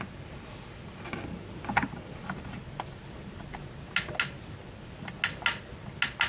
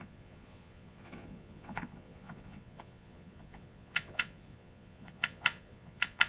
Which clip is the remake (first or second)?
second